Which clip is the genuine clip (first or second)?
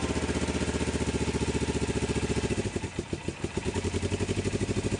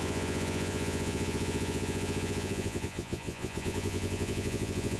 first